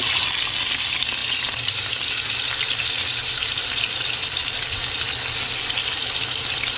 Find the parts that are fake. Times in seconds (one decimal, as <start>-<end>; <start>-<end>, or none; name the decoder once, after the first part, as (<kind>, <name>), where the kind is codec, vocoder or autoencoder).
1.2-2.2 (vocoder, BigVGAN v2); 3.2-3.7